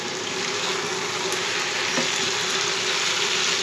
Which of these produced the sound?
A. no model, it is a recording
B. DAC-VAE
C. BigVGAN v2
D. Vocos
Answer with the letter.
A